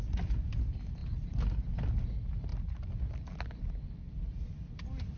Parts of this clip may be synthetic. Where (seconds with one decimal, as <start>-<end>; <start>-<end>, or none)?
none